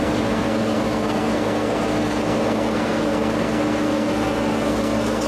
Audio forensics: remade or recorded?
remade